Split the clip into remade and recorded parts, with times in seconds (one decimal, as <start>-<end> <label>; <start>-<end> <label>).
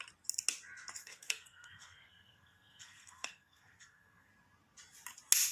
0.0-1.0 recorded; 1.0-4.3 remade; 4.3-5.5 recorded